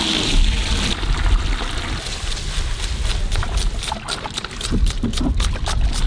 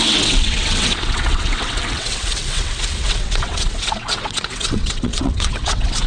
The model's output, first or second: second